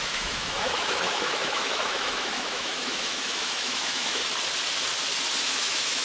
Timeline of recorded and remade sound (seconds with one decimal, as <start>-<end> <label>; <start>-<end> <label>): 0.0-4.2 remade; 4.2-5.4 recorded; 5.4-6.0 remade